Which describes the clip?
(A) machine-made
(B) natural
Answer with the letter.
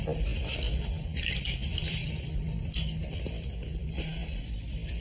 B